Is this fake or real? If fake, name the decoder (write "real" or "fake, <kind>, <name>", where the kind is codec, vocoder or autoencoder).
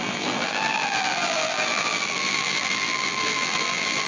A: fake, vocoder, BigVGAN v2